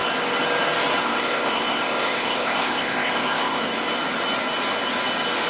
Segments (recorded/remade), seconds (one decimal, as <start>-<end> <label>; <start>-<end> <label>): 0.0-1.0 recorded; 1.0-3.7 remade; 3.7-5.5 recorded